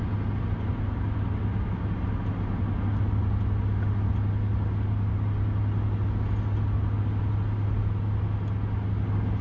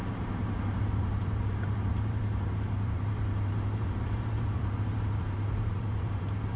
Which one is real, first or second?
first